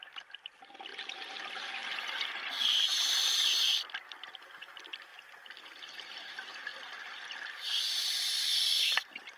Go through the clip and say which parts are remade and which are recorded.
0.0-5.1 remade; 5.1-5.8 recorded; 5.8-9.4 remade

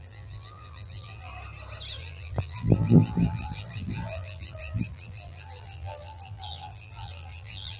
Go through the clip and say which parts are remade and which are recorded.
0.0-1.3 remade; 1.3-2.0 recorded; 2.0-7.8 remade